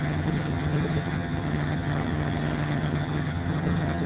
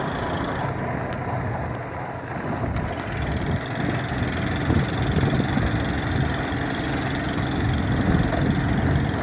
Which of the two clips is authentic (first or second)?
second